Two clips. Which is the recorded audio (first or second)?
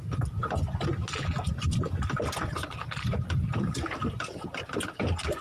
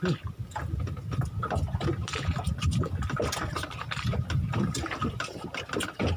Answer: first